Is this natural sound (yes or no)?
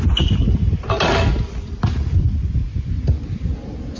yes